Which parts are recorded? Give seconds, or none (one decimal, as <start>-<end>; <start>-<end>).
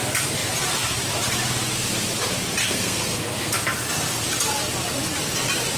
0.0-2.6; 3.5-5.8